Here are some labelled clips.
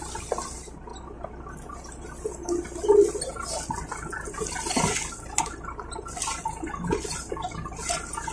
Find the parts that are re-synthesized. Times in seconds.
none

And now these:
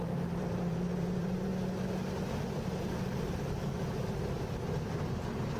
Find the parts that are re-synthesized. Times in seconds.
0.0-1.5; 4.9-5.6

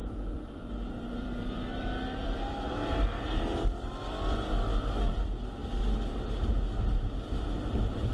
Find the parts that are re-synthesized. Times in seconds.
0.0-4.1

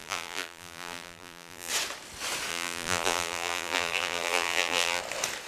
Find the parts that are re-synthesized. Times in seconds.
0.0-1.7; 2.5-5.0

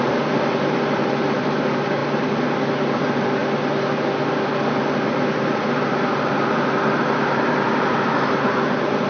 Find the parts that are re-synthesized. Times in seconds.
0.0-3.4; 5.3-9.1

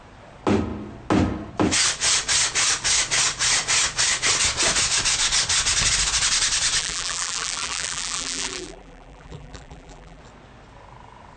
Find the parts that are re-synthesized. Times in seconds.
6.8-10.2

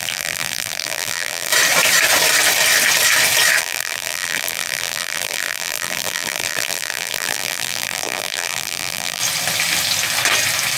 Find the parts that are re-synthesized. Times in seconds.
0.0-1.5; 3.6-9.2

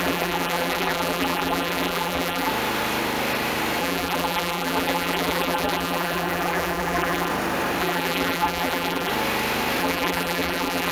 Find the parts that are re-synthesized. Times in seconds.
0.0-2.5; 3.8-7.3; 7.8-9.1; 9.8-10.9